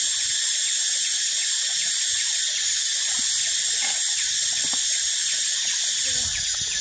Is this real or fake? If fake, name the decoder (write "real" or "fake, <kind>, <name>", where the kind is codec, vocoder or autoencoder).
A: real